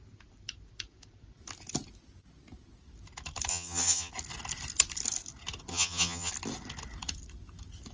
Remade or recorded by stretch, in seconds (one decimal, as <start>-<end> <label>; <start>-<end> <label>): 0.0-3.5 recorded; 3.5-4.1 remade; 4.1-5.7 recorded; 5.7-6.3 remade; 6.3-7.9 recorded